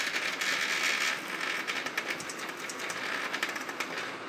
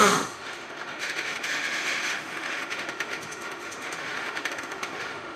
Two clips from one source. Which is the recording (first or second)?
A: first